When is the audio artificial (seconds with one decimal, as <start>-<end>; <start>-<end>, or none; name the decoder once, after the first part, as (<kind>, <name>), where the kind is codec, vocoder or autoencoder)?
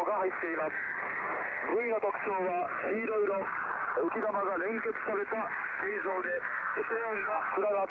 5.7-7.4 (codec, SNAC)